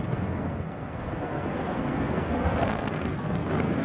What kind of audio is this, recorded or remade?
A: remade